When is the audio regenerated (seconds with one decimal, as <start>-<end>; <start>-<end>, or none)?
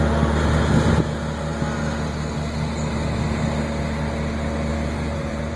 4.7-5.6